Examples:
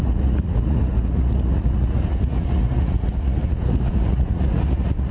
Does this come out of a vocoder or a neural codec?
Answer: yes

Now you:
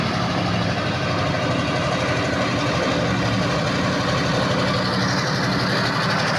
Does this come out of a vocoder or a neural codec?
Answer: no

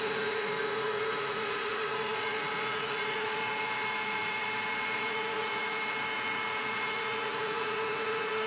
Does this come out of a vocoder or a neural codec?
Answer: yes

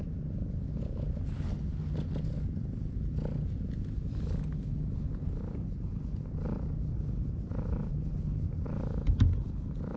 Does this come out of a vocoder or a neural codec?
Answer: no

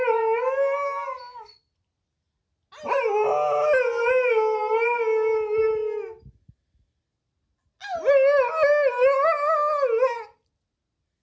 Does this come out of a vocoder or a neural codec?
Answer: no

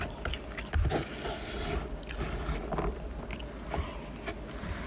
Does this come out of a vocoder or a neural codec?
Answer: no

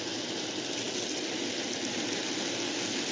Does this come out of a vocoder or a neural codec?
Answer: no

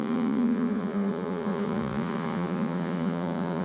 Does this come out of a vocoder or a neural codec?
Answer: yes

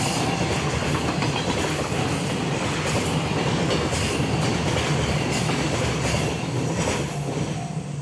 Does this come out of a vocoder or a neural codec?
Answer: no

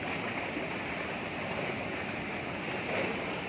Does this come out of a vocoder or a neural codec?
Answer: no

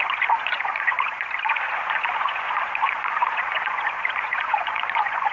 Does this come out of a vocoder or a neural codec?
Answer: yes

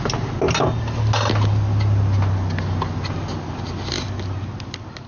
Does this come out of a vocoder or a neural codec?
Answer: no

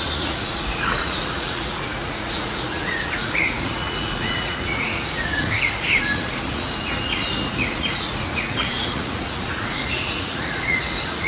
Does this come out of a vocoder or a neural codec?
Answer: yes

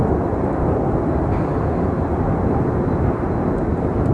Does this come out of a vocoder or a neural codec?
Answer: no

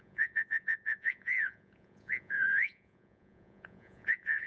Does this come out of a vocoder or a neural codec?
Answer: yes